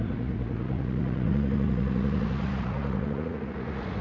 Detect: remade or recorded remade